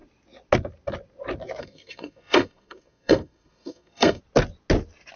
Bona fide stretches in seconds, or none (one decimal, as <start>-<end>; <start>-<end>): 0.0-1.6; 4.2-5.2